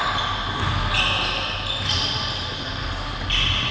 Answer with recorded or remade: recorded